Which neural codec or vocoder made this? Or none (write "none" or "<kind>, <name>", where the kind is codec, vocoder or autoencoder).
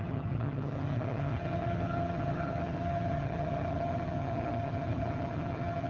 vocoder, HiFi-GAN